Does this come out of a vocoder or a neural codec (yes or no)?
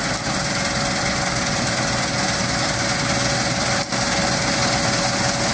no